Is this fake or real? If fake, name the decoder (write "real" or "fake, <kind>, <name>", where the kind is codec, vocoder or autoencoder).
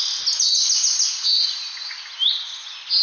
real